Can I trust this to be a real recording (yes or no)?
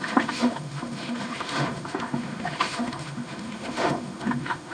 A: no